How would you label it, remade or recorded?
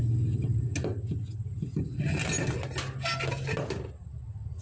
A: recorded